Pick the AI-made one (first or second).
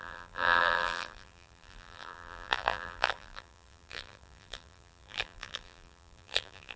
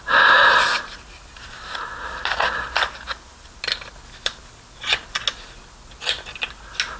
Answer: first